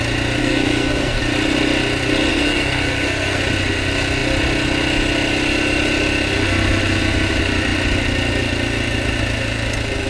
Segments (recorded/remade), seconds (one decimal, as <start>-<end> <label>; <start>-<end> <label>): 0.0-0.4 recorded; 0.4-1.2 remade; 1.2-2.3 recorded; 2.3-3.4 remade; 3.4-10.1 recorded